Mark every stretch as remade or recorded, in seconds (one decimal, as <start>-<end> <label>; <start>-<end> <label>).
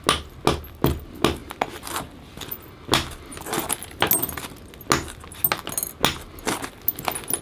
0.0-7.4 recorded